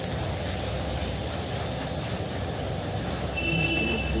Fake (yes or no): no